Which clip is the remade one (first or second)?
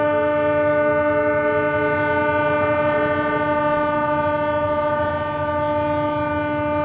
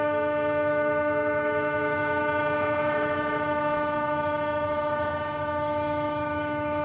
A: second